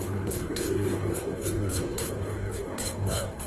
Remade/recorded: remade